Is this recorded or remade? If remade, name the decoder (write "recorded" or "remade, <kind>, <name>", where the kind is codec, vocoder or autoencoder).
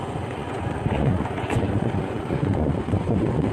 remade, vocoder, Vocos